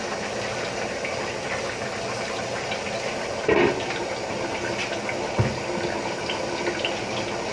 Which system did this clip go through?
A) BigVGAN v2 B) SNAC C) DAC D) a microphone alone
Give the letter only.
D